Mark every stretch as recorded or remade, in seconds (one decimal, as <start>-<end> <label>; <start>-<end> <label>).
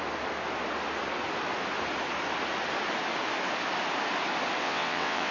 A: 0.0-4.6 recorded; 4.6-5.3 remade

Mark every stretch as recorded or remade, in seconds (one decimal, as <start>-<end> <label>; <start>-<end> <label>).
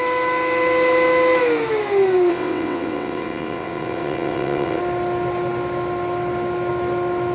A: 0.0-2.3 recorded; 2.3-4.8 remade; 4.8-7.3 recorded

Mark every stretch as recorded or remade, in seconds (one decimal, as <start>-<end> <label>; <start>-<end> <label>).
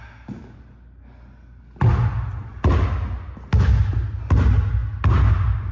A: 0.0-5.7 recorded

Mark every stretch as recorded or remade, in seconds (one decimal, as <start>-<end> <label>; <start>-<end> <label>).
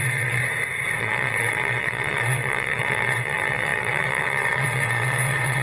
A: 0.0-0.4 remade; 0.4-1.0 recorded; 1.0-5.6 remade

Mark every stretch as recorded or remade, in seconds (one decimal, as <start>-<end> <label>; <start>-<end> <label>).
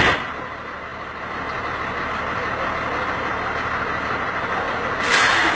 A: 0.0-5.5 recorded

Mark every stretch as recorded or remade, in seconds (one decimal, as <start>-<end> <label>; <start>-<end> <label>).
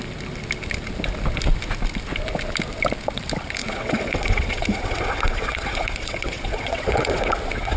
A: 0.0-3.6 recorded; 3.6-7.8 remade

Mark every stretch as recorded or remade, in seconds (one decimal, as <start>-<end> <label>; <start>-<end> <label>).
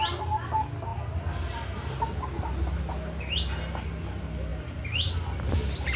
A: 0.0-6.0 recorded